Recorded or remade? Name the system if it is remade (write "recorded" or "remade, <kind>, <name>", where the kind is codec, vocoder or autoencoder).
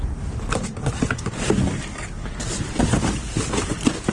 recorded